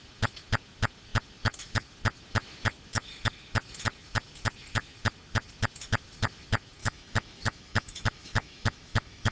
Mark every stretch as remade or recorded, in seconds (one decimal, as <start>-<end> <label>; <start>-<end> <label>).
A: 0.0-6.8 recorded; 6.8-9.3 remade

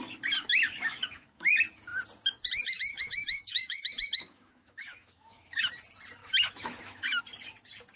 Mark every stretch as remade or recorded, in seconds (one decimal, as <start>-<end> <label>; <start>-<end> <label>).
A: 0.0-0.4 recorded; 0.4-1.5 remade; 1.5-2.9 recorded; 2.9-5.6 remade; 5.6-6.2 recorded; 6.2-7.2 remade; 7.2-8.0 recorded

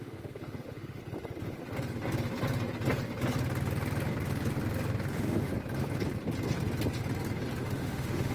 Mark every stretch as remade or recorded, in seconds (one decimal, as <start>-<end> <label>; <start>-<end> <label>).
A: 0.0-1.0 remade; 1.0-5.1 recorded; 5.1-5.5 remade; 5.5-7.6 recorded; 7.6-8.3 remade

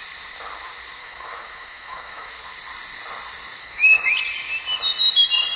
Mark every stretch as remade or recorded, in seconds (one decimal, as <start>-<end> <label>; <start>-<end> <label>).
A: 0.0-1.0 recorded; 1.0-2.3 remade; 2.3-3.6 recorded; 3.6-4.1 remade; 4.1-5.6 recorded

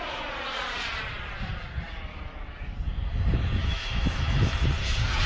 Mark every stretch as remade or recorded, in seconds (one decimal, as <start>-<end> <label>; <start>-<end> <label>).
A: 0.0-3.6 recorded; 3.6-4.5 remade; 4.5-5.3 recorded

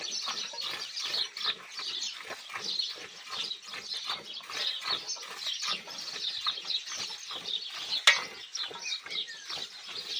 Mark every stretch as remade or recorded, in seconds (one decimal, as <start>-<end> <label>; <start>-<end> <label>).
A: 0.0-10.2 recorded

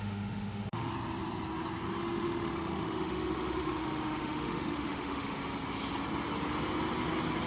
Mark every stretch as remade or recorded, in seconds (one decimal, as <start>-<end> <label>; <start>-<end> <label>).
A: 0.0-0.9 remade; 0.9-2.0 recorded; 2.0-5.4 remade; 5.4-7.5 recorded